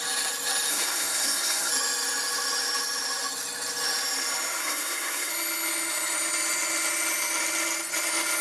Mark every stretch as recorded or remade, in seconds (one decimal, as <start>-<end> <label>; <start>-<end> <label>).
0.0-0.7 recorded; 0.7-1.7 remade; 1.7-4.6 recorded; 4.6-5.3 remade; 5.3-8.4 recorded